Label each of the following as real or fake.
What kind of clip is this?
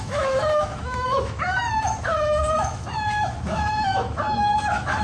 fake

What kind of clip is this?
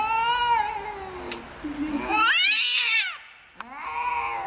real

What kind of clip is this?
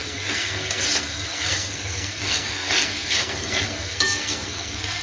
fake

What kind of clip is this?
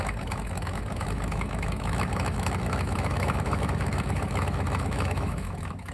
fake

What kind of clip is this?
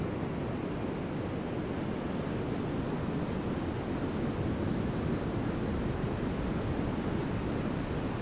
real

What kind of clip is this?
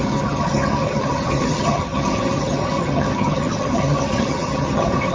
fake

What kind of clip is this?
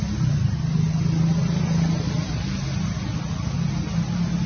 real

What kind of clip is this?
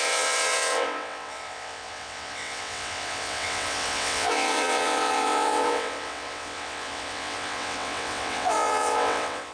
fake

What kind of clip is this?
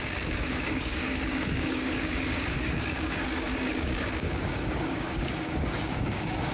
fake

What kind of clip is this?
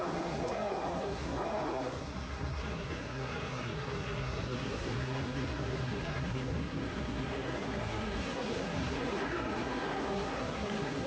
fake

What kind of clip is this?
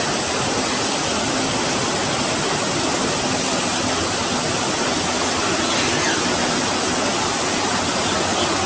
real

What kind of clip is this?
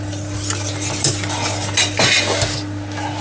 real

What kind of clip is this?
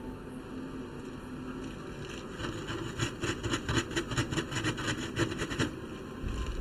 real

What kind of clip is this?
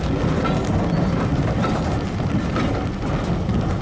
real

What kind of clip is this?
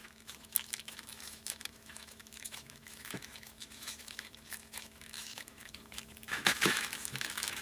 fake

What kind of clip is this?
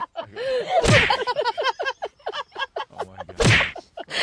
real